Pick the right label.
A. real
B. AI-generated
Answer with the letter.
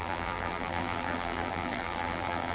B